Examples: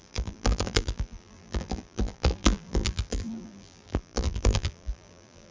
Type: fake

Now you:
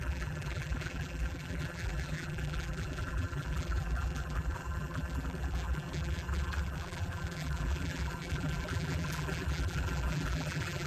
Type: fake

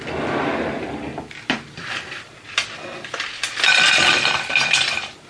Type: real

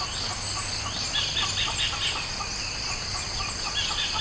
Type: real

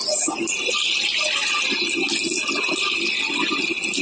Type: real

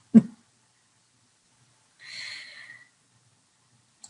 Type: real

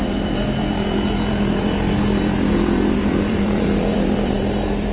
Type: fake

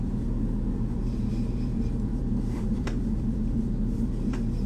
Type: fake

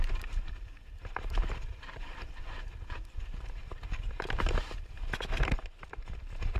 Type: fake